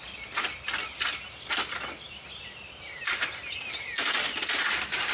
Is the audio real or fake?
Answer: real